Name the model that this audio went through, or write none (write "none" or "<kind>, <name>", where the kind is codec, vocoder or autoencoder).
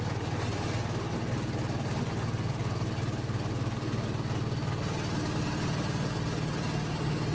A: none